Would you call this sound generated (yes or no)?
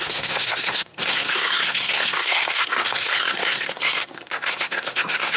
yes